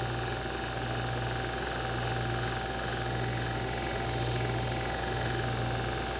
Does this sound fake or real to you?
real